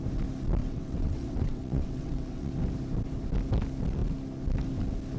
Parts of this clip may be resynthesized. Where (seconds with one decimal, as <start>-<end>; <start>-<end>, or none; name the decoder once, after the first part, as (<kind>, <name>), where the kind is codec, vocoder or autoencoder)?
0.6-2.5 (vocoder, WaveNeXt)